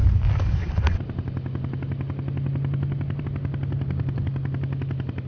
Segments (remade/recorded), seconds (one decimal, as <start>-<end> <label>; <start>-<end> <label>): 0.0-5.3 recorded